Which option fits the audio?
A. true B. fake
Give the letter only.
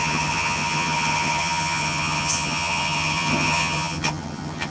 B